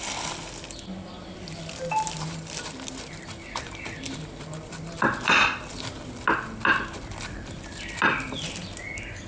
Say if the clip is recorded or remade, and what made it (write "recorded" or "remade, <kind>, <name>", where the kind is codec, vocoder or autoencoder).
recorded